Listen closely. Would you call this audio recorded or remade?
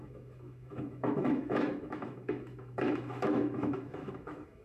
remade